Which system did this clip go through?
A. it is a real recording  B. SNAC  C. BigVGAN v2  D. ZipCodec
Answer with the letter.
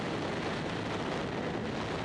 A